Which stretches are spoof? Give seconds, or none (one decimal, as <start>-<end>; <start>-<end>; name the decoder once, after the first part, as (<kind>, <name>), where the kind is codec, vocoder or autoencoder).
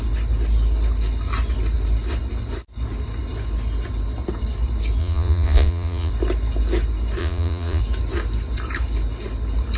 5.0-6.1 (vocoder, Vocos); 7.2-7.8